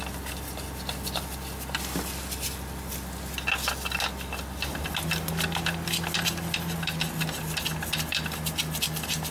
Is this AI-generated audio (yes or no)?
no